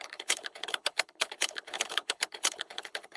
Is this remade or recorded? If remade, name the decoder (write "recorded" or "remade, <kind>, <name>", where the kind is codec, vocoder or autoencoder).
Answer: remade, codec, HILCodec